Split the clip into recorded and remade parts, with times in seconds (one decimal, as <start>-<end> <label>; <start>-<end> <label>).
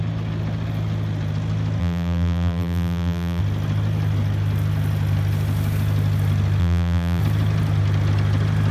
0.0-1.8 recorded; 1.8-3.4 remade; 3.4-6.6 recorded; 6.6-7.2 remade; 7.2-8.7 recorded